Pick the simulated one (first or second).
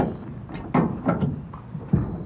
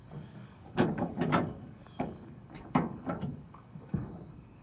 second